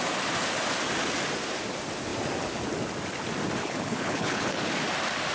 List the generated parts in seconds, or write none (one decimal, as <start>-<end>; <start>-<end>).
3.6-4.6